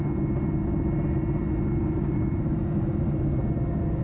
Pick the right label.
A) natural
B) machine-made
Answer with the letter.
A